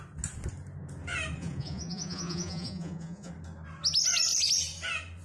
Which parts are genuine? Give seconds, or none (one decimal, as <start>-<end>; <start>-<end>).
0.0-1.4; 3.3-5.2